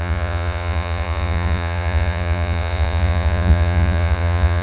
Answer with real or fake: fake